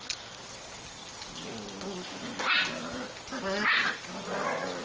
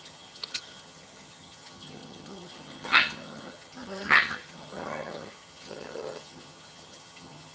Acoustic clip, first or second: first